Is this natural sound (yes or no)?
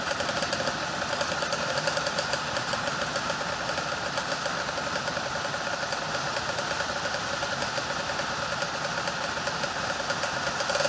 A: yes